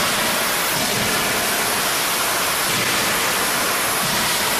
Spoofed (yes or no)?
no